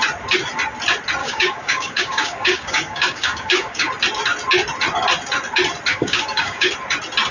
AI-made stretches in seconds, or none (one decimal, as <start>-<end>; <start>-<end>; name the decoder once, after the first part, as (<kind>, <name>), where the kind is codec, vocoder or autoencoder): 1.2-3.9 (codec, DAC); 5.9-6.7